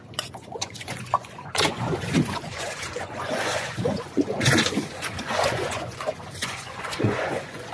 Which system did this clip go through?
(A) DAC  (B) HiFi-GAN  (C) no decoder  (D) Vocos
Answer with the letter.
D